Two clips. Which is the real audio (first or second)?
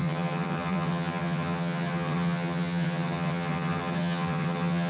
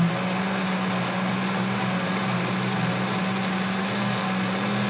second